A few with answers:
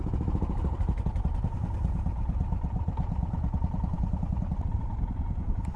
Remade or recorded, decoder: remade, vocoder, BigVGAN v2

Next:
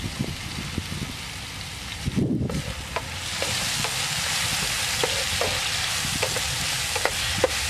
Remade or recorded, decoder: recorded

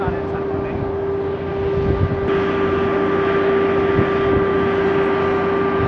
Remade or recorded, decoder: recorded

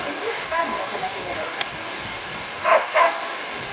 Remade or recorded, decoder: remade, codec, DAC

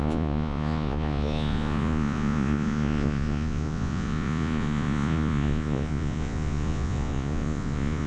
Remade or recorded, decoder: remade, vocoder, Vocos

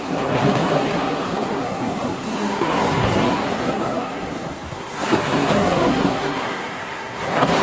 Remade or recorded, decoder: remade, codec, SNAC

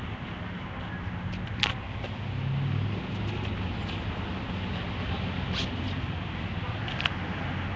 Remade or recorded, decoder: recorded